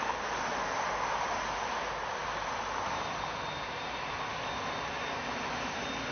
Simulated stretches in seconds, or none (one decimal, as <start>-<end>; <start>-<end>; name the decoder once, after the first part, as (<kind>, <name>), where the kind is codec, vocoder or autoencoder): none